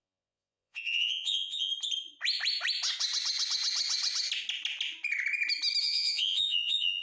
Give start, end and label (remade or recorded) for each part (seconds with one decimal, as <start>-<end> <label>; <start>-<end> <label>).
0.0-1.7 remade; 1.7-5.8 recorded; 5.8-7.0 remade